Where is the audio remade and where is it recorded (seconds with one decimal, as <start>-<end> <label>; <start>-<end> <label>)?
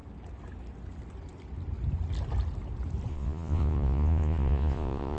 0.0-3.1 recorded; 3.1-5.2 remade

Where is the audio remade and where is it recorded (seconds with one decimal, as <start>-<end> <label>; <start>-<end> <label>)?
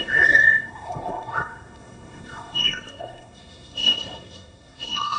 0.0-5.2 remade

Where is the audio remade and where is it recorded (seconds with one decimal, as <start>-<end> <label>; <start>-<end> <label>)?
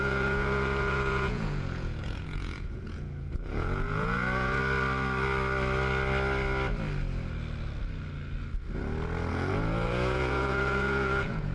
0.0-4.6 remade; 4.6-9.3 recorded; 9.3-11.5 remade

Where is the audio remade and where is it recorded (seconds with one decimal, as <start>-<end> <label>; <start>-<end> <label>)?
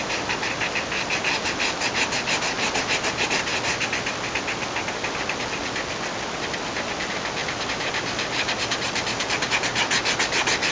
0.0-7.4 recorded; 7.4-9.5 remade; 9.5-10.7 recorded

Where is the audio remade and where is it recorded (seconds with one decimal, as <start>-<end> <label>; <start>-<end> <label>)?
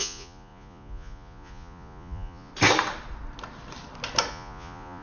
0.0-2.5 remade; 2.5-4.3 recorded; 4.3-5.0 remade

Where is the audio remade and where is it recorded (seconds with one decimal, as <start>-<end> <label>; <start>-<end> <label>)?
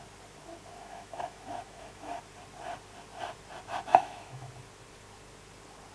0.0-0.7 recorded; 0.7-2.2 remade; 2.2-3.9 recorded; 3.9-4.5 remade; 4.5-5.9 recorded